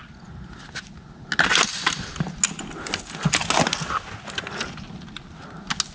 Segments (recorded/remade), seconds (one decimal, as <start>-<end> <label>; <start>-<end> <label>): 0.0-5.9 recorded